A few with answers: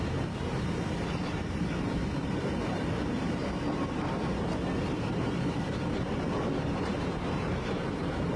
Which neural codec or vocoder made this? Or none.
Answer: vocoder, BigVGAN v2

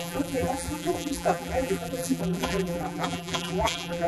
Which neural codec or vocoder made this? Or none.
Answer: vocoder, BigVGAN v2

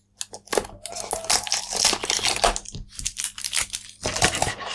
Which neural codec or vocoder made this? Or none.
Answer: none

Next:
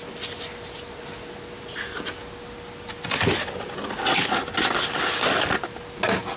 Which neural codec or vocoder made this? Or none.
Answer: none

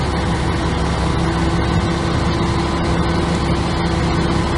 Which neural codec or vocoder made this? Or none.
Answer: none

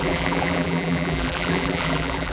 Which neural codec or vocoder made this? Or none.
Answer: vocoder, BigVGAN v2